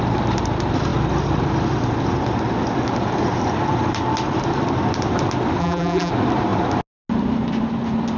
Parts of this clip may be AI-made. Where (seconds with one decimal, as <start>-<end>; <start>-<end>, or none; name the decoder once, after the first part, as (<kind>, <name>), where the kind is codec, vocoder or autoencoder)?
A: 5.6-6.1 (vocoder, BigVGAN v2)